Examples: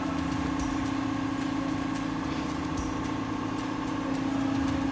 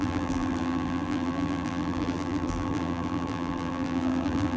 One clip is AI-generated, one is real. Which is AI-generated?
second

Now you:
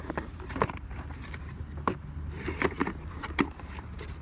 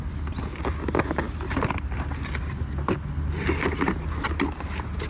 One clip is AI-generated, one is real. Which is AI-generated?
first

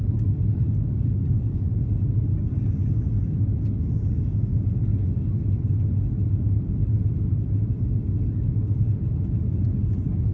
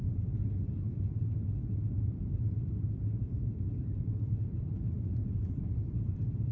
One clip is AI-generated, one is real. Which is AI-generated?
second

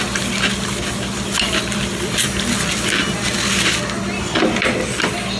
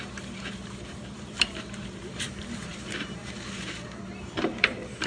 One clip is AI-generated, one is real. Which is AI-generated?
second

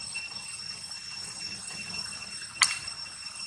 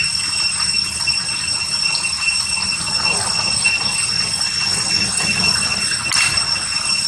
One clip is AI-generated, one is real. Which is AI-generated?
first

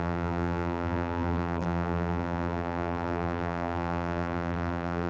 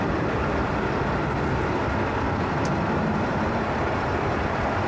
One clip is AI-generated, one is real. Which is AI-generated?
first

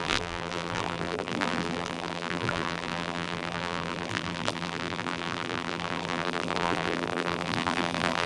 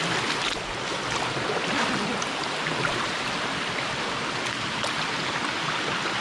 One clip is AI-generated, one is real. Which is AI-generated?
first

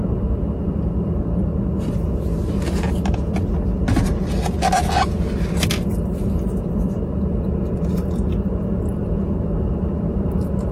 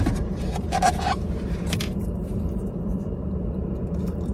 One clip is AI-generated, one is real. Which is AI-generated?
second